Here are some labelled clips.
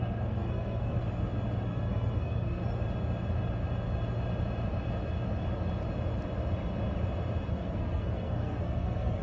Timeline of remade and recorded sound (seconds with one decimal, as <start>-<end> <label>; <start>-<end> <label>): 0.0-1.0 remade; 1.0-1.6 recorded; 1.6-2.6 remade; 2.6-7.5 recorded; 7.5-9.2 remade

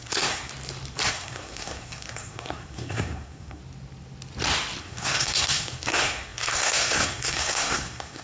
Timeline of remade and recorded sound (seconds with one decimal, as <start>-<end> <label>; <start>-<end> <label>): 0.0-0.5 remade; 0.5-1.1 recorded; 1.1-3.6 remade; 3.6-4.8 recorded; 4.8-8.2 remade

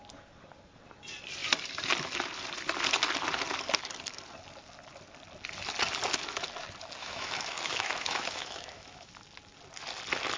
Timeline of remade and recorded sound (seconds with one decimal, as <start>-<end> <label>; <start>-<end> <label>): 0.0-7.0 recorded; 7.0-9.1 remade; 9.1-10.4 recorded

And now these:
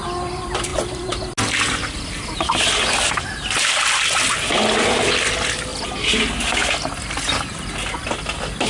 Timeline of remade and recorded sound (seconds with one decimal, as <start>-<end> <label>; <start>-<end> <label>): 0.0-8.7 recorded

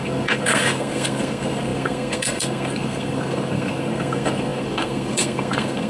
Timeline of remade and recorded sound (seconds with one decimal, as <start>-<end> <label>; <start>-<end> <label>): 0.0-5.9 remade